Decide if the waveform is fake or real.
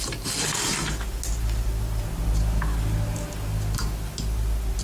real